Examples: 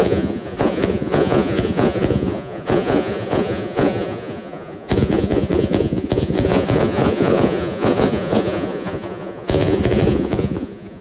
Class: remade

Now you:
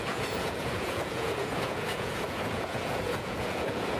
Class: remade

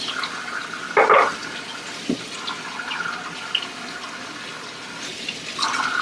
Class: recorded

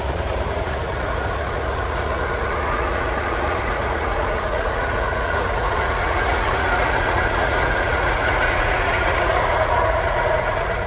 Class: remade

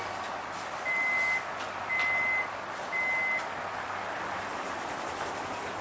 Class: recorded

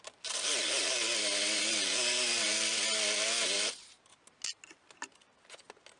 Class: recorded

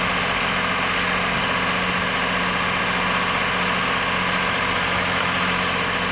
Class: recorded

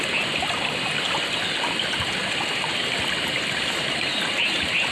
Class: recorded